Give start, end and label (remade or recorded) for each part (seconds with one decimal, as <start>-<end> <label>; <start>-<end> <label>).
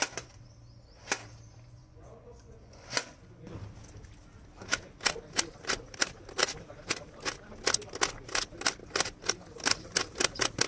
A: 0.0-1.8 recorded; 1.8-3.5 remade; 3.5-10.7 recorded